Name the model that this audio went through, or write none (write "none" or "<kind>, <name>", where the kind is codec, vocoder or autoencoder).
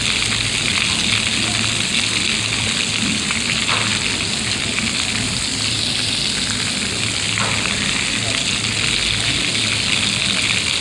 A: none